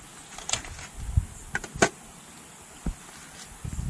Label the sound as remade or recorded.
recorded